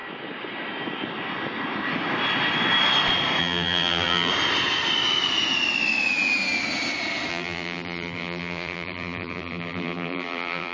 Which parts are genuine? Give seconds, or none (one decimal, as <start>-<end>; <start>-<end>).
0.0-3.4; 4.3-7.3